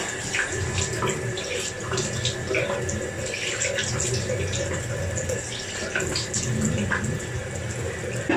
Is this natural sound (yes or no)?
yes